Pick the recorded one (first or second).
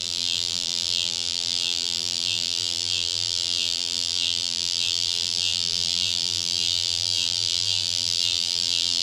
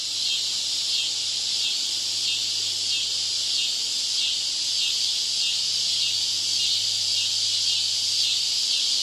second